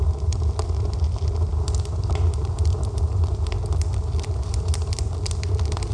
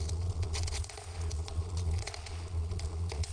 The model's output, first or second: second